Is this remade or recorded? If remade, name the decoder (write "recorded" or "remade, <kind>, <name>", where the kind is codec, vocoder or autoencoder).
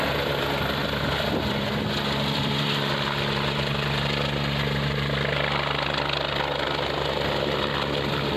remade, vocoder, BigVGAN v2